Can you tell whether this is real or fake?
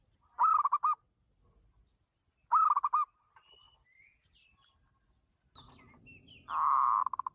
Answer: real